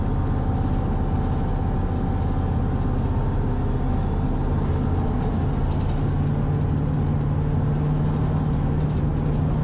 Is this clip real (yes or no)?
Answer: yes